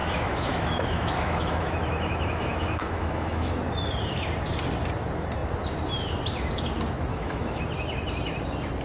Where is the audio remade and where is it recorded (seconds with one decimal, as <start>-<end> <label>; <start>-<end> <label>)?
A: 0.0-3.5 remade; 3.5-7.1 recorded; 7.1-7.6 remade; 7.6-8.8 recorded